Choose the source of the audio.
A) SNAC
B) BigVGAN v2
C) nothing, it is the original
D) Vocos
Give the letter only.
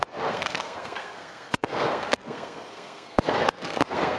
A